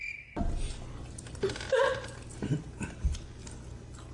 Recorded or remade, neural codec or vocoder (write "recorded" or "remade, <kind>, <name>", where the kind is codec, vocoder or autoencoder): recorded